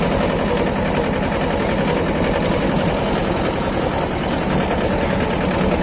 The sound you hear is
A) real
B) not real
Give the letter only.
A